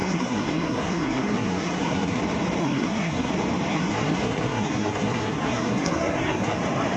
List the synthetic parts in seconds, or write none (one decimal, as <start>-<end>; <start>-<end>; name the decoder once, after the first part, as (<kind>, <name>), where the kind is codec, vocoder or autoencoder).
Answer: 0.0-2.2 (codec, SNAC); 2.6-3.3; 3.7-6.6